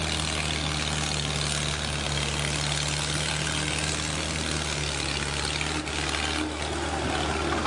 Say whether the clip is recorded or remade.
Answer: recorded